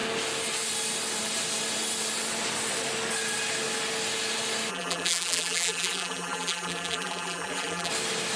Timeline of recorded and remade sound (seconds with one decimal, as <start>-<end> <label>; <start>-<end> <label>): 0.0-4.7 recorded; 4.7-7.9 remade; 7.9-8.4 recorded